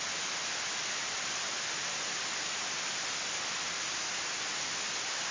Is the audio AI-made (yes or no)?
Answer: no